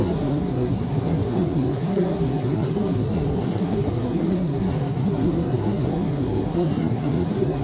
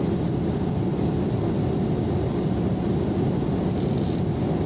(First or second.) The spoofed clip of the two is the first